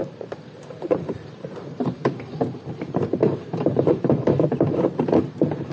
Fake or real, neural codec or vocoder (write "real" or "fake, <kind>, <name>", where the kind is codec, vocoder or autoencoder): fake, vocoder, BigVGAN v2